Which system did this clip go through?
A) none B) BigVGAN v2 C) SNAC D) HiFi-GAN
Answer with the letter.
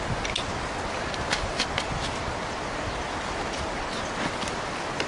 A